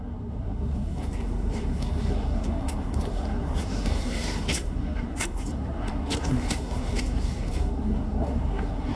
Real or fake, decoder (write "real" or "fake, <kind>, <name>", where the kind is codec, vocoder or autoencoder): fake, codec, SNAC